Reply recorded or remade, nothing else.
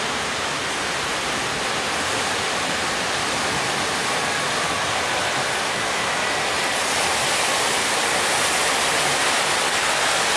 recorded